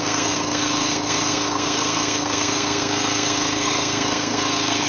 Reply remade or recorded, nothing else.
remade